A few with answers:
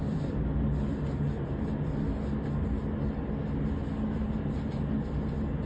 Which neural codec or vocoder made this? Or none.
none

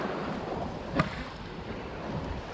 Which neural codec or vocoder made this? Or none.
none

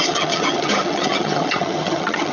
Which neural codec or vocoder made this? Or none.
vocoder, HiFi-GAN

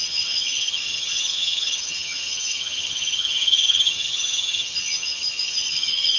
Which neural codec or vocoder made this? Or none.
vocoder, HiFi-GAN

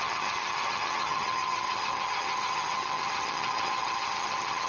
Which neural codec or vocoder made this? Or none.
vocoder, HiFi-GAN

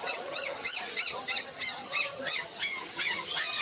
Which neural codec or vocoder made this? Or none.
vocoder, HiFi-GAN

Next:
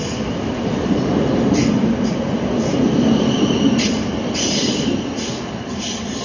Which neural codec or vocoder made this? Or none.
none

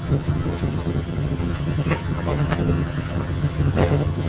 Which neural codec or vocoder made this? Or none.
vocoder, HiFi-GAN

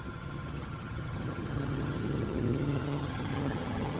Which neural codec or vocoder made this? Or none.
vocoder, HiFi-GAN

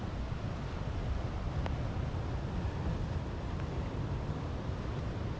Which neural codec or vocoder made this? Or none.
none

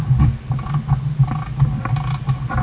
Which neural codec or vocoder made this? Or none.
none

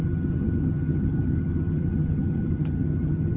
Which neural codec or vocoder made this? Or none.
vocoder, HiFi-GAN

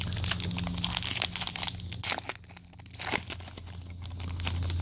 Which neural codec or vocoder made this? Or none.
none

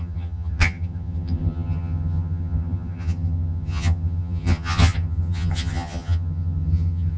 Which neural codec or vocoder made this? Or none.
vocoder, HiFi-GAN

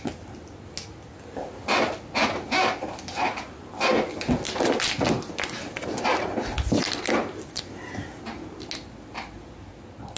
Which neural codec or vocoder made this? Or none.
none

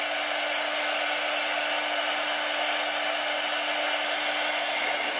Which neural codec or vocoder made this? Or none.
none